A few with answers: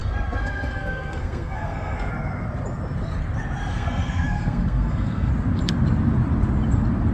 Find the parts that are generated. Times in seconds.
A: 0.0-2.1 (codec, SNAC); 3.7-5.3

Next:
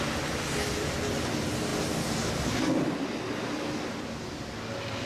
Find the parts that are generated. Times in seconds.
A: none

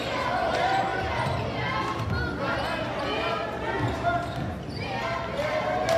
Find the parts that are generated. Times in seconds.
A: none

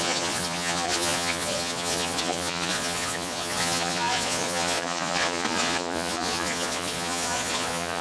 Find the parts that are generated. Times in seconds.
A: 0.0-8.0 (vocoder, Vocos)

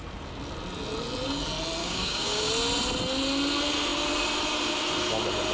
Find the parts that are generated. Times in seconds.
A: 1.8-2.5 (codec, DAC)